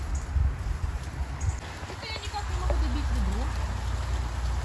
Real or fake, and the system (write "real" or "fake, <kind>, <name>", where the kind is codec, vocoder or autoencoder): real